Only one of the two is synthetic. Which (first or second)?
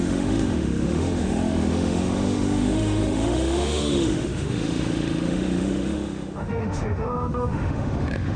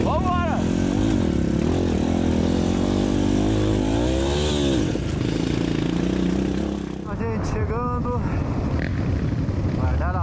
first